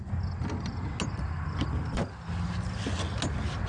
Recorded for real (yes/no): yes